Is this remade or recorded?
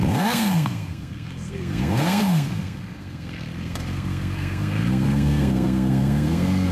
remade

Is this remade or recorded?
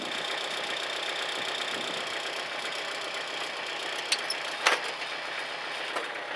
recorded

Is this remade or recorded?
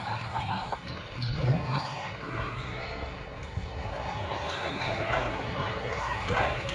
remade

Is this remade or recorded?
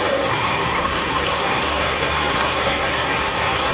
remade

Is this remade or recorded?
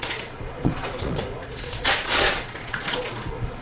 remade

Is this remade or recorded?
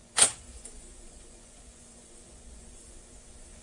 remade